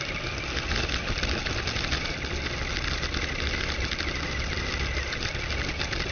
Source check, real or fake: real